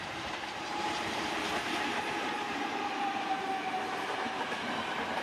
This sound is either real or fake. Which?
fake